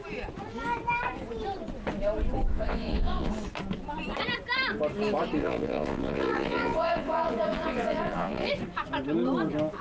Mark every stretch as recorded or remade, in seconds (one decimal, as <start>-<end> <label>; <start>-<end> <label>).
0.0-2.5 recorded; 2.5-3.3 remade; 3.3-5.4 recorded; 5.4-8.5 remade; 8.5-9.8 recorded